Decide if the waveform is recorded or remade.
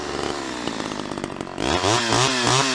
recorded